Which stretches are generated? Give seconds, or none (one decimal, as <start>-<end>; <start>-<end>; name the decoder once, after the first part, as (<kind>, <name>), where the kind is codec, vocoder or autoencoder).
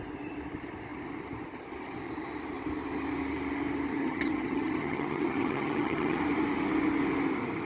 3.9-6.2 (vocoder, HiFi-GAN)